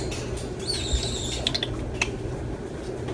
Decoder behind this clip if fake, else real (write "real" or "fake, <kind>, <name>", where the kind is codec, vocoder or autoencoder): real